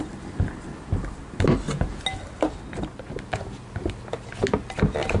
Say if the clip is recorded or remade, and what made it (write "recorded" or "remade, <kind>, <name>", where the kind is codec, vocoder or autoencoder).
recorded